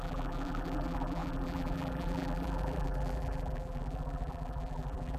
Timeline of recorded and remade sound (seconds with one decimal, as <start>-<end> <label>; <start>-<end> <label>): 0.0-5.2 remade